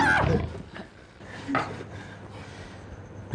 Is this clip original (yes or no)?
yes